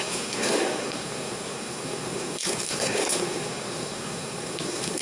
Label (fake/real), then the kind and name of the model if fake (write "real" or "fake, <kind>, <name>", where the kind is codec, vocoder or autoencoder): fake, codec, SNAC